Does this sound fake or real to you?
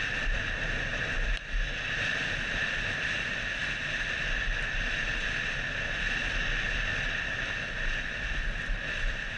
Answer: real